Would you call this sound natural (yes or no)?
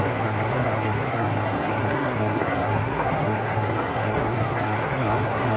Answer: no